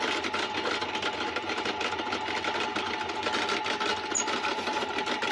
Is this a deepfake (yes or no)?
no